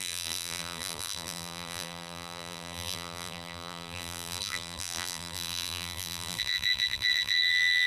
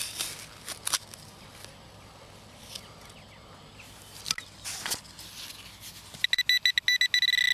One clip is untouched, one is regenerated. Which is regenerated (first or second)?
first